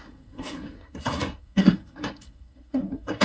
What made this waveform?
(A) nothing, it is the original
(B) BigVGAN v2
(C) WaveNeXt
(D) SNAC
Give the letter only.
D